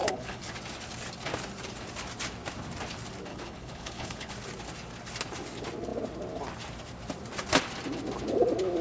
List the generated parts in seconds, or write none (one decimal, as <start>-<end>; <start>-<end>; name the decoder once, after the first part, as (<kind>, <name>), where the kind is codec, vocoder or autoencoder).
0.0-0.5 (codec, HILCodec); 3.3-4.3